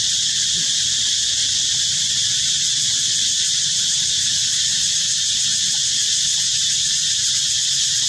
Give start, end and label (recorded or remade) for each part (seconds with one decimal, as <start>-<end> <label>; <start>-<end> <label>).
0.0-8.1 recorded